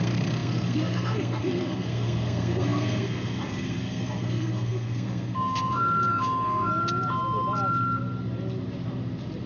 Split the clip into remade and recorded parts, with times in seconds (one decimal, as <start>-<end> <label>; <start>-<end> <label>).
0.0-6.7 remade; 6.7-9.5 recorded